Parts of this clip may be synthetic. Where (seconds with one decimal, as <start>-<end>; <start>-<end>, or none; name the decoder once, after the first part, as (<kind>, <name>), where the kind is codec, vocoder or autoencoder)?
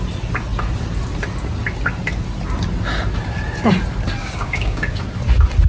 4.2-5.0 (codec, DAC)